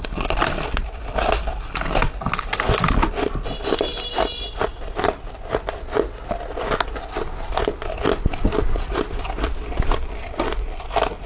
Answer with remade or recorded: recorded